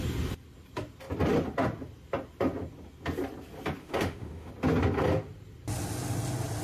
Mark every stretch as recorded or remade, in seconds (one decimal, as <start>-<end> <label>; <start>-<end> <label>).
0.0-3.8 recorded; 3.8-4.5 remade; 4.5-6.6 recorded